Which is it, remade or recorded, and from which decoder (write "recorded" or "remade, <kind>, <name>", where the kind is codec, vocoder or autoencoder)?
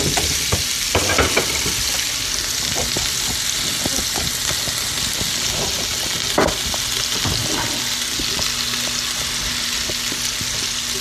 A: recorded